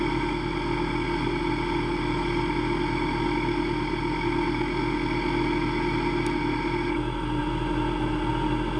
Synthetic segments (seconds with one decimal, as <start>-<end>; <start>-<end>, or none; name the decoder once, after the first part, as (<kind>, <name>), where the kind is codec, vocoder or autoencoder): none